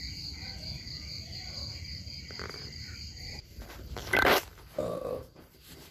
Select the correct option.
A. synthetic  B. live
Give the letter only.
A